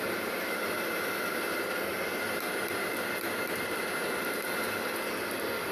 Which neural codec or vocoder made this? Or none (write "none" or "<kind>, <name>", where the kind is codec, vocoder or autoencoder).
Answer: none